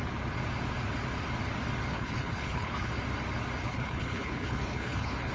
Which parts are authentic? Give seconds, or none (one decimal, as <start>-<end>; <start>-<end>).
0.0-1.9; 2.9-3.6